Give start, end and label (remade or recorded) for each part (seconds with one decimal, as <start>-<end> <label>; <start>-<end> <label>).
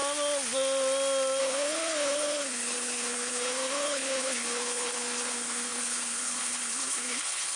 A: 0.0-1.4 recorded; 1.4-7.6 remade